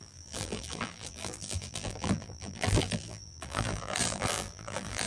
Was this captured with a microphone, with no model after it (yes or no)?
no